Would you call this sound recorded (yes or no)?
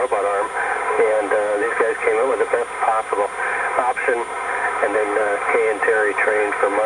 yes